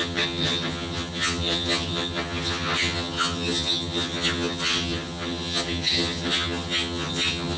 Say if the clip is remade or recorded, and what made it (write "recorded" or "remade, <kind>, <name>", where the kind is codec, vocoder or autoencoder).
remade, vocoder, HiFi-GAN